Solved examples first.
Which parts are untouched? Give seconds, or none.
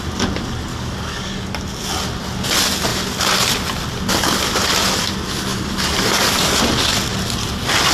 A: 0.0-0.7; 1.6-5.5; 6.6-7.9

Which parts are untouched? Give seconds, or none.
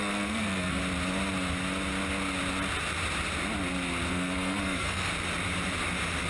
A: 0.8-4.1; 5.1-6.3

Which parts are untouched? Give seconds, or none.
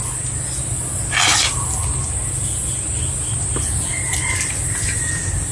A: 0.0-5.5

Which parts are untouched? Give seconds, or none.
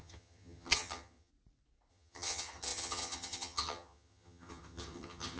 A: 1.3-1.9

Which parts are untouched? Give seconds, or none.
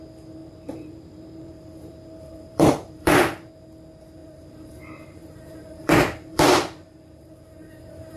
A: 0.0-0.4; 3.5-4.2; 7.4-8.2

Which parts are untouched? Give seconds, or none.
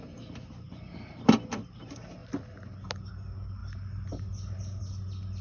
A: 0.0-5.4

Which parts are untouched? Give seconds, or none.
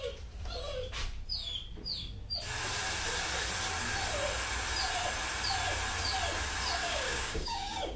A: 0.0-6.8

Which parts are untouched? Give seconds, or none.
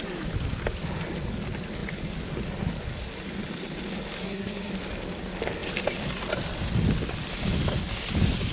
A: 0.0-4.2; 4.7-8.5